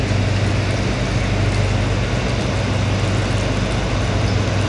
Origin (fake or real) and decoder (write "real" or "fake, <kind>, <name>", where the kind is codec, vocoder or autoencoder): real